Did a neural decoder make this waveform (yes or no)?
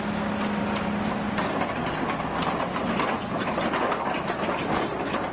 no